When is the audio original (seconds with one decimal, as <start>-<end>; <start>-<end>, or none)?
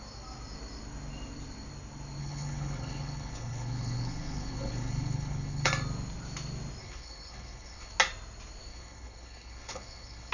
0.0-2.2; 5.7-6.8; 7.9-8.7